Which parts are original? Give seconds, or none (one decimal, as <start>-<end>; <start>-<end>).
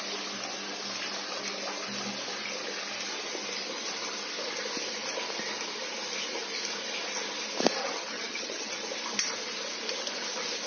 0.0-7.8; 8.7-10.7